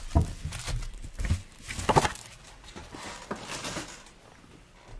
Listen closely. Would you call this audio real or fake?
real